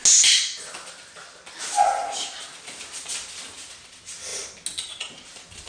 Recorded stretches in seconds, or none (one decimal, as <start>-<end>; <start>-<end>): 0.0-5.7